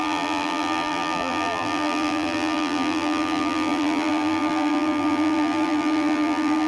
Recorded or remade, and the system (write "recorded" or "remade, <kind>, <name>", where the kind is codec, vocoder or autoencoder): remade, vocoder, BigVGAN v2